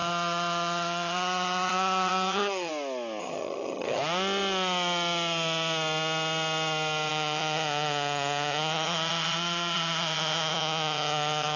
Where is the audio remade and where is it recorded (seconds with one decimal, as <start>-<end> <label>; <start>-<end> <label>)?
0.0-2.7 remade; 2.7-3.2 recorded; 3.2-4.0 remade; 4.0-7.1 recorded; 7.1-11.6 remade